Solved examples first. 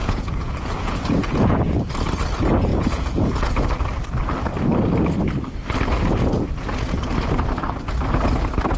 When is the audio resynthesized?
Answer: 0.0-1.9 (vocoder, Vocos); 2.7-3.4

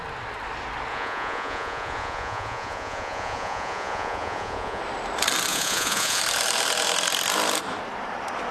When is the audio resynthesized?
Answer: 0.9-4.8 (vocoder, Vocos); 5.5-6.2

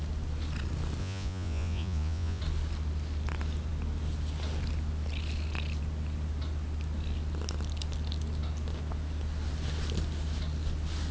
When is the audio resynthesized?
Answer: 1.0-2.4 (vocoder, Vocos)